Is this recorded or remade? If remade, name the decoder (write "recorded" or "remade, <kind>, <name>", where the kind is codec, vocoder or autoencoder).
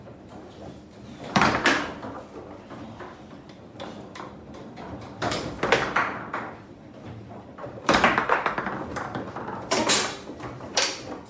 remade, vocoder, BigVGAN v2